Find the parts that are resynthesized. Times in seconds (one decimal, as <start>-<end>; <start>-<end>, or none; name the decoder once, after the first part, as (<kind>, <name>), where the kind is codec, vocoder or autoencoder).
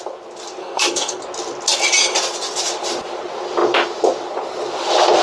0.6-1.2 (codec, SNAC)